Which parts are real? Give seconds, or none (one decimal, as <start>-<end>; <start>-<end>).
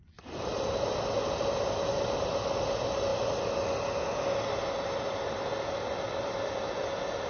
0.0-7.3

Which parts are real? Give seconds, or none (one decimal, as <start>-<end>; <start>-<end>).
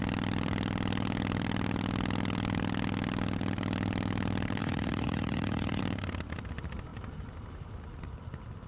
0.0-4.6; 5.8-8.7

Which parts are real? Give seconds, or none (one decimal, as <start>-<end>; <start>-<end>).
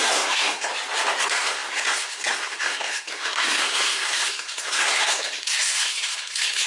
0.7-1.2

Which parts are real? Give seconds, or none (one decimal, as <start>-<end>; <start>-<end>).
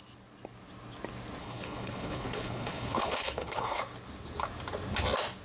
0.0-1.4; 3.8-5.4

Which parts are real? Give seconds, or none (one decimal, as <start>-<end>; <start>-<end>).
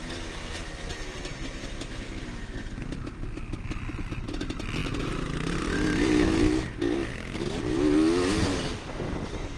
0.0-9.6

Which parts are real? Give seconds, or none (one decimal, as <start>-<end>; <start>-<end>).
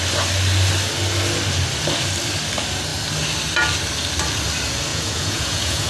0.0-4.9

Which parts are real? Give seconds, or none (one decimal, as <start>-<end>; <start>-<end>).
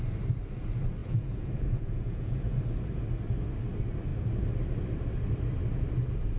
0.0-1.0; 2.6-6.4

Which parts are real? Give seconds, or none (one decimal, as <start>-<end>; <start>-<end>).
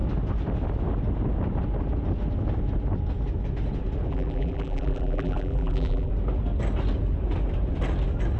0.0-4.1; 6.1-8.4